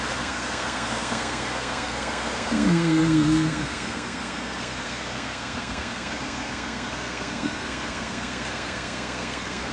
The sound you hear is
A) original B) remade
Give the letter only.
B